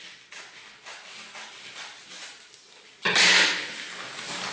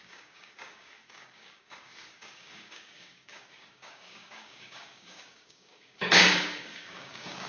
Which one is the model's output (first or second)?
second